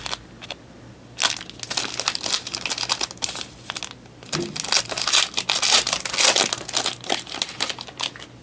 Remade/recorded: recorded